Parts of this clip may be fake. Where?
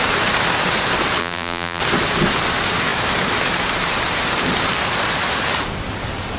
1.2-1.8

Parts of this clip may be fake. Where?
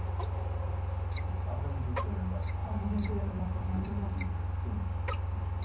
2.6-4.0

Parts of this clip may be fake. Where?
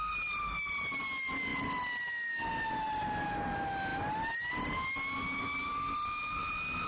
none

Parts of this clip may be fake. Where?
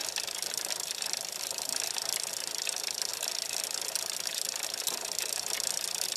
none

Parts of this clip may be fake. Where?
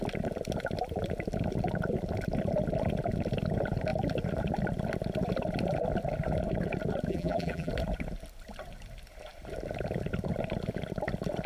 7.1-7.7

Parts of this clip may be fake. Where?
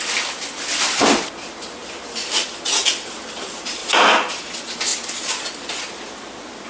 1.8-2.6; 3.8-4.4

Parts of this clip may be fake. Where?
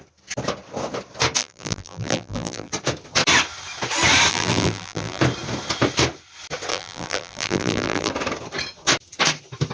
1.4-2.7; 4.3-5.2; 6.7-8.1